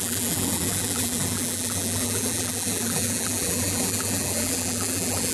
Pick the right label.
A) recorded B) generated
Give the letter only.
B